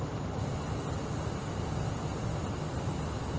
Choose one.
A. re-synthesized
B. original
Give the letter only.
B